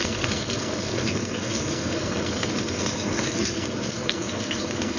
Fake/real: fake